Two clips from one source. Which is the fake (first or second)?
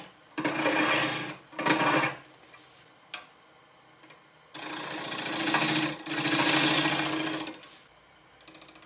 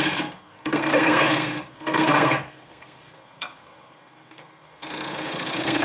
second